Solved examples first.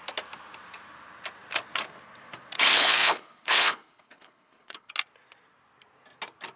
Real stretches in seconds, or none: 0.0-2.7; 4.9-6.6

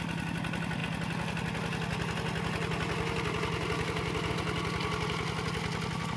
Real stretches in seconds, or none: 0.0-6.2

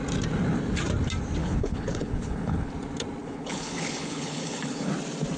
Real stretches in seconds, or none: 0.0-1.4; 2.7-3.2; 4.9-5.4

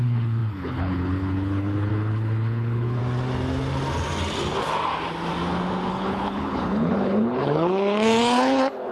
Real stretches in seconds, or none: 3.0-5.9

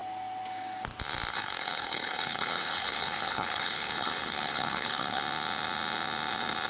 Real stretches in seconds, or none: 0.0-1.3; 5.2-6.7

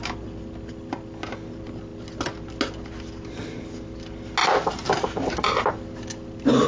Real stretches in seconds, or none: 0.0-6.7